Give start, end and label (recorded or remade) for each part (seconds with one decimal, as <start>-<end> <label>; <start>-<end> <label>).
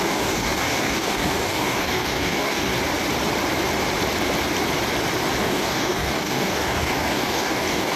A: 0.0-2.7 remade; 2.7-5.4 recorded; 5.4-8.0 remade